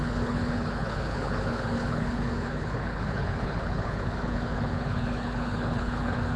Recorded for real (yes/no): no